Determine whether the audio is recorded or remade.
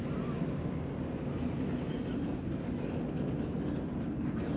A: recorded